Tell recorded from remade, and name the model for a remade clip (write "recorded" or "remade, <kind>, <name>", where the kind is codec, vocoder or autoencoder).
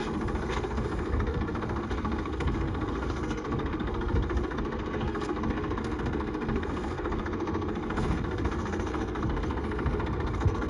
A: remade, codec, SNAC